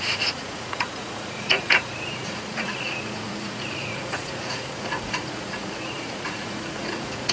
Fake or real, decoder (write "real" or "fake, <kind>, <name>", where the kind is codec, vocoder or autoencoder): fake, vocoder, Vocos